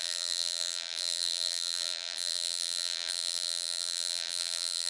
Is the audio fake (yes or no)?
yes